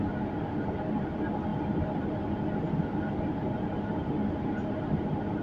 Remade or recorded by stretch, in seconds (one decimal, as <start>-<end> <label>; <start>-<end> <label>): 0.0-5.4 recorded